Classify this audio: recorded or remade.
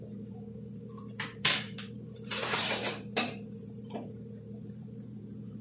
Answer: remade